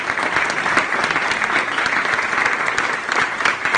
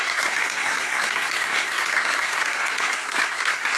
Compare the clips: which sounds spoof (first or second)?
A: second